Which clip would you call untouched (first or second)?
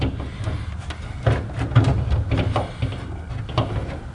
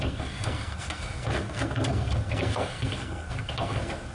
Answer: first